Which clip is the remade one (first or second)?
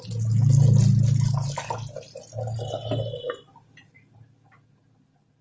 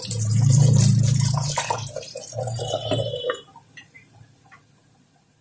second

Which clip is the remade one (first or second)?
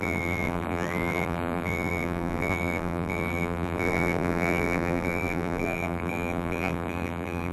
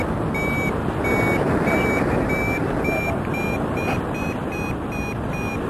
first